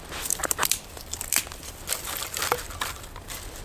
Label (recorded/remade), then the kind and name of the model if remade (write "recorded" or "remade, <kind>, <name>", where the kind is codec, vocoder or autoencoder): recorded